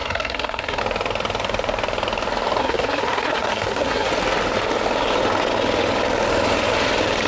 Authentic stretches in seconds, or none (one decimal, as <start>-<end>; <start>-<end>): 0.8-2.6; 4.1-7.3